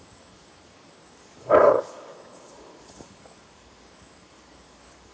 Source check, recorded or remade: remade